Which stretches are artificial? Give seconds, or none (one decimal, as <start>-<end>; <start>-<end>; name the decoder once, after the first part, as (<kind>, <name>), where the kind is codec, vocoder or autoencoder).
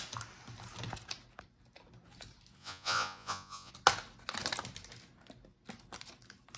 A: 2.6-3.7 (vocoder, Vocos)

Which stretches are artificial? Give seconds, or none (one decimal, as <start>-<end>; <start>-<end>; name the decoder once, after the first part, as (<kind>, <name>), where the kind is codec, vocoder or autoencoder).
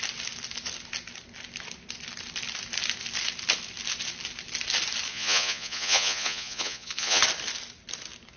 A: 5.1-7.2 (vocoder, Vocos)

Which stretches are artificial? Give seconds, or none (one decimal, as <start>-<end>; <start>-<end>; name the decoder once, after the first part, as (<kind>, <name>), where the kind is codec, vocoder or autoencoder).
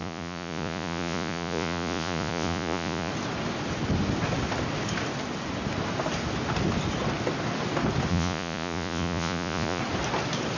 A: 0.0-3.1 (vocoder, Vocos); 8.1-9.8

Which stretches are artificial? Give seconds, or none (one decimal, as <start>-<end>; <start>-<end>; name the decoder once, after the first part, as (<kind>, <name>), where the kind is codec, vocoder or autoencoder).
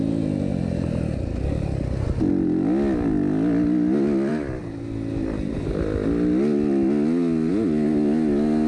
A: none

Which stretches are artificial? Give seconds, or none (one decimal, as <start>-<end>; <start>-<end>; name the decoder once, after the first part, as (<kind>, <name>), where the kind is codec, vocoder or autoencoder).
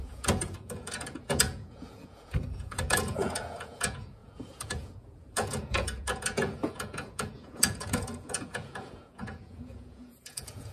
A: 0.0-10.7 (vocoder, Vocos)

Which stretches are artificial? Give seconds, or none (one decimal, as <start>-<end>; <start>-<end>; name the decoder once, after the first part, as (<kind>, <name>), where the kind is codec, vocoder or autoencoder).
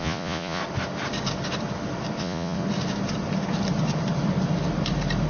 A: 0.0-0.6 (vocoder, Vocos); 2.2-2.6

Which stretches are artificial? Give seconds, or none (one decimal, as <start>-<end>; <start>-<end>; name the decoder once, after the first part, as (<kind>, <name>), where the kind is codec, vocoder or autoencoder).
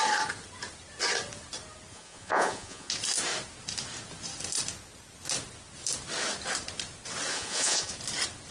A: 1.9-2.9 (vocoder, Vocos); 7.3-7.9